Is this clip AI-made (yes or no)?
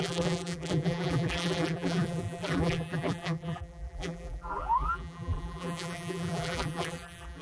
yes